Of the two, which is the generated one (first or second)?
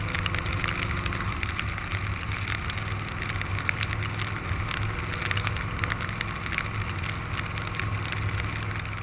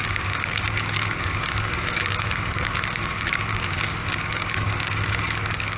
second